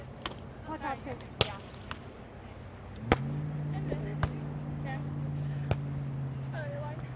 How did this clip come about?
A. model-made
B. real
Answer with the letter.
B